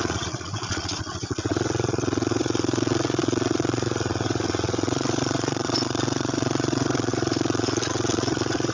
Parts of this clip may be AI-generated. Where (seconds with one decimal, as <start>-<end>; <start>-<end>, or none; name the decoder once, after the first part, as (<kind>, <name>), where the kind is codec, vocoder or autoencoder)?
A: 0.0-8.7 (vocoder, Vocos)